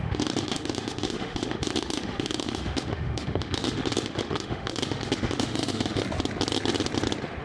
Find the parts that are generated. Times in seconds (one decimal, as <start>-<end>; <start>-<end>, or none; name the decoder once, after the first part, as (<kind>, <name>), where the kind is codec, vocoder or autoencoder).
0.0-6.0 (autoencoder, DAC-VAE)